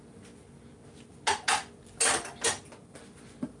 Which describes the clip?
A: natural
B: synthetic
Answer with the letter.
A